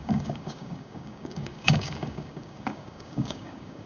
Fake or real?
fake